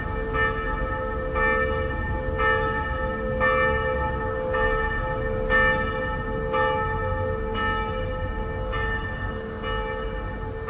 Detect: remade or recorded recorded